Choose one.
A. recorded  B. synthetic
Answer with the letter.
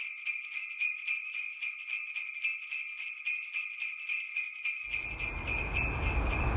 A